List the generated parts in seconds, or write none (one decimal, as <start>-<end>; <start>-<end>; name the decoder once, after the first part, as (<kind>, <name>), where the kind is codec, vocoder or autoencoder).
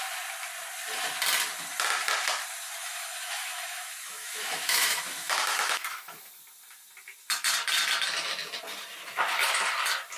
2.8-6.3 (autoencoder, DAC-VAE)